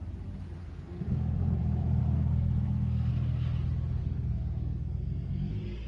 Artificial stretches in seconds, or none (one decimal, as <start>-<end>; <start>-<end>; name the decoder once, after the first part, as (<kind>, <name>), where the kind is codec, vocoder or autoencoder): 0.6-1.6 (codec, SNAC); 2.0-3.1; 4.0-5.5